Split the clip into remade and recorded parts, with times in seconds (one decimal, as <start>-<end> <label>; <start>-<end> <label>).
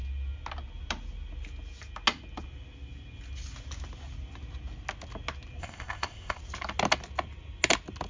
0.0-5.6 recorded; 5.6-6.4 remade; 6.4-8.1 recorded